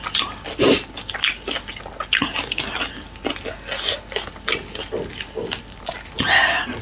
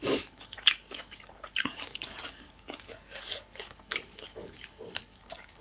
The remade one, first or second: second